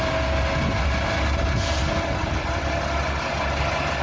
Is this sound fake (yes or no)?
no